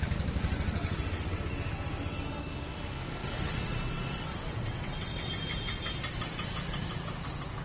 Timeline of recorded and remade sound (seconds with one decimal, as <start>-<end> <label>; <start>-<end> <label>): 0.0-0.8 recorded; 0.8-1.4 remade; 1.4-3.2 recorded; 3.2-5.3 remade; 5.3-7.6 recorded